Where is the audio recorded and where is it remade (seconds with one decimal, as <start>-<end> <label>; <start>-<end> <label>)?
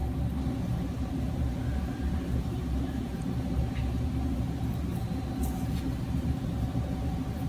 0.0-0.6 recorded; 0.6-1.5 remade; 1.5-2.1 recorded; 2.1-4.9 remade; 4.9-6.0 recorded; 6.0-7.5 remade